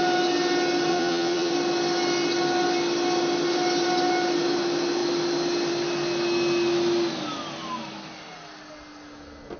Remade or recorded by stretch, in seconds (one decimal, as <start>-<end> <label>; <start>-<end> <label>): 0.0-0.9 recorded; 0.9-1.5 remade; 1.5-9.6 recorded